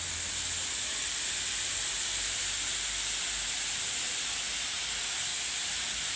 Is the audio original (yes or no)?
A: yes